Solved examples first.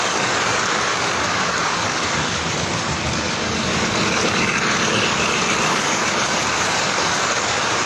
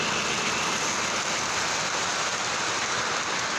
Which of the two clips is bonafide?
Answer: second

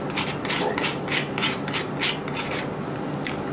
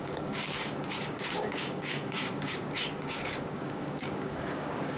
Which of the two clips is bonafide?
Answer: first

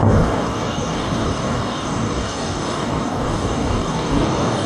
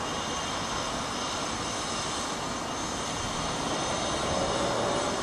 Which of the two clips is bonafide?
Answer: second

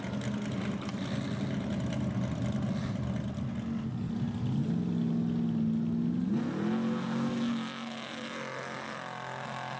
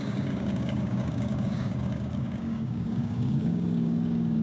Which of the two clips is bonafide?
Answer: first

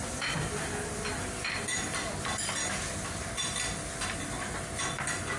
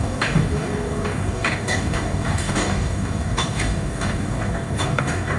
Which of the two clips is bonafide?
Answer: first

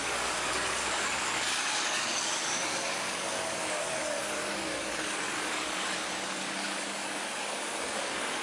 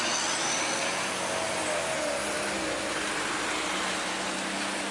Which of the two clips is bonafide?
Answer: second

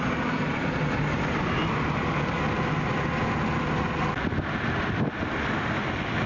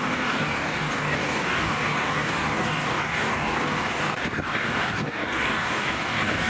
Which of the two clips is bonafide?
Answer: first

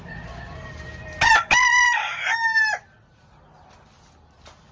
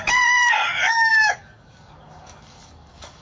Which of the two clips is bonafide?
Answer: first